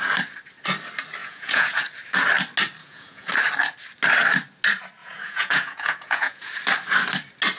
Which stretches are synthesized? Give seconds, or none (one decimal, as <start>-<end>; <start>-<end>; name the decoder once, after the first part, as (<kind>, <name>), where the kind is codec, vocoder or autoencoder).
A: 1.2-1.8 (vocoder, Vocos); 2.8-3.3; 5.0-6.5